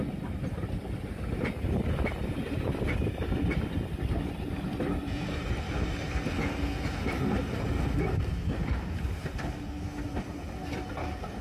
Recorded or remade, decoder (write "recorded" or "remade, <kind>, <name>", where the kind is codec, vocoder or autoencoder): recorded